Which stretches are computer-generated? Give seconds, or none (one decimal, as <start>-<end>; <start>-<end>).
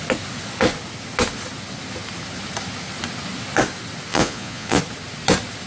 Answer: 4.1-4.8